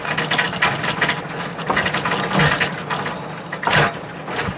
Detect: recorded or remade recorded